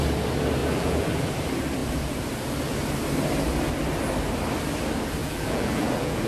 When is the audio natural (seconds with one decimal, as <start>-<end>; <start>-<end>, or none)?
0.0-0.6; 1.3-5.2